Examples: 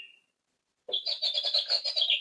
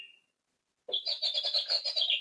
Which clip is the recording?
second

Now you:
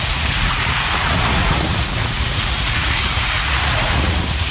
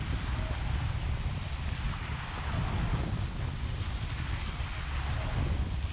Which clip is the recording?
second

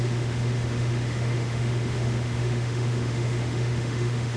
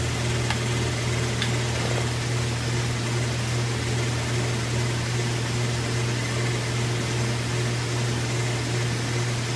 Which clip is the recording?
second